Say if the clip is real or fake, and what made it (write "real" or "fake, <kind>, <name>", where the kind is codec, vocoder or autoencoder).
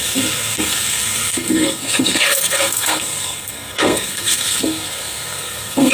fake, codec, SNAC